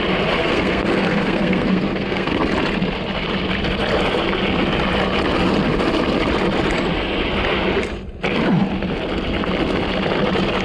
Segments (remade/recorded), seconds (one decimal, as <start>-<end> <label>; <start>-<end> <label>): 0.0-0.4 recorded; 0.4-2.4 remade; 2.4-10.6 recorded

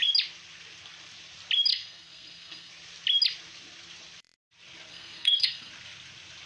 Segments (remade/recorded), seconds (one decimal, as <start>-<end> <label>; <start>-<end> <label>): 0.0-1.7 recorded; 1.7-2.7 remade; 2.7-4.9 recorded; 4.9-5.7 remade; 5.7-6.5 recorded

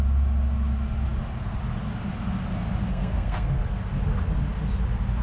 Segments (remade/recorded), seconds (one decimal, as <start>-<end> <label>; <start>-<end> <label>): 0.0-2.9 recorded; 2.9-3.6 remade; 3.6-5.2 recorded

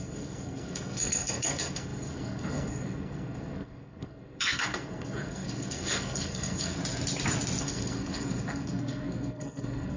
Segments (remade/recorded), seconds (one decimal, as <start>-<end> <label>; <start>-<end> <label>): 0.0-6.8 remade; 6.8-7.6 recorded; 7.6-10.0 remade

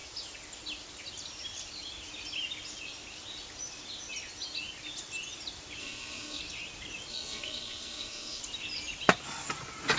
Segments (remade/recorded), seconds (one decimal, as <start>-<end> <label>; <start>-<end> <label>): 0.0-5.8 recorded; 5.8-6.4 remade; 6.4-7.1 recorded; 7.1-8.4 remade; 8.4-10.0 recorded

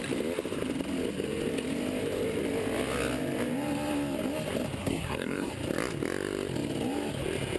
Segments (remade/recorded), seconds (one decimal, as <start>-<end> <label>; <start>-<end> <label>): 0.0-4.8 recorded; 4.8-5.5 remade; 5.5-7.6 recorded

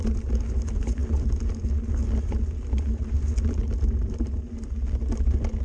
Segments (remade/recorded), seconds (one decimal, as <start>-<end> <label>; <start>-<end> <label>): 0.0-5.6 recorded

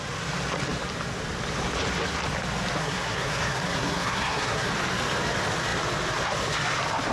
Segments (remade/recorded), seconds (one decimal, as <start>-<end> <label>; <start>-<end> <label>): 0.0-2.8 recorded; 2.8-4.7 remade; 4.7-7.1 recorded